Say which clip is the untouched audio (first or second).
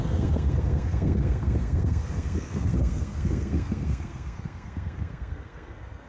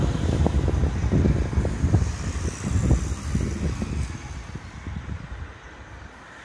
second